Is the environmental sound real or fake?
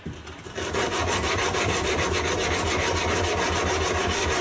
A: real